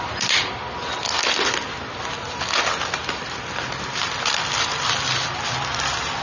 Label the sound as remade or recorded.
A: recorded